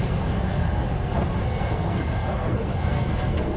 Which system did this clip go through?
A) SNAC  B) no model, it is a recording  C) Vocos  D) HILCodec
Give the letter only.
A